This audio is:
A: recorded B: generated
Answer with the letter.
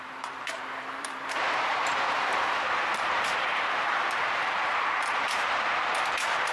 B